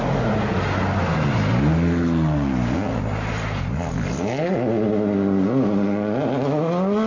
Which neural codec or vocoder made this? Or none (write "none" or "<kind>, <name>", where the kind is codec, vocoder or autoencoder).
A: none